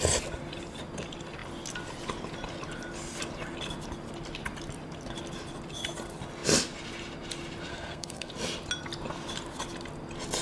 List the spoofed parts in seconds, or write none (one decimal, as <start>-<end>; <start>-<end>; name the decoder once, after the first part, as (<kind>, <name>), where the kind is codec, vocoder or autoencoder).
7.7-8.3 (codec, SNAC)